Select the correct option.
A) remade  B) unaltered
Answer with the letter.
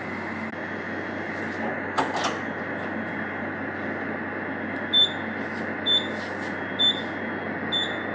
B